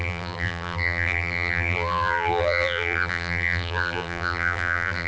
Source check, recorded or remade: remade